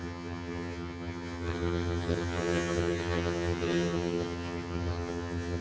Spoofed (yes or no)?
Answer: yes